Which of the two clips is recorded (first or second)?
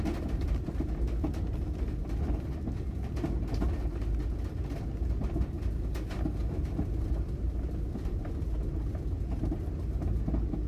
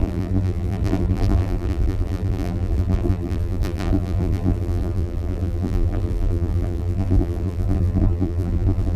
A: first